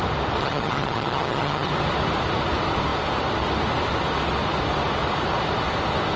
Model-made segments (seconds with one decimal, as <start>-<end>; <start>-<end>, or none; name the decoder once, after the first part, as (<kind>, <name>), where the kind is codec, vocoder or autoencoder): 0.4-1.7 (vocoder, HiFi-GAN)